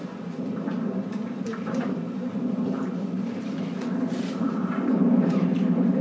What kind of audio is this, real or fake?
fake